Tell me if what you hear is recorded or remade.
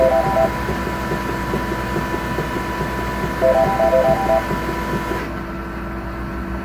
recorded